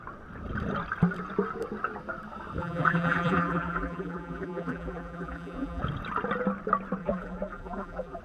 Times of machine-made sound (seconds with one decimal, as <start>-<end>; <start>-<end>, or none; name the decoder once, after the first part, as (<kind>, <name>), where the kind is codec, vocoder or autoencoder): 2.6-5.8 (vocoder, BigVGAN v2); 7.0-8.2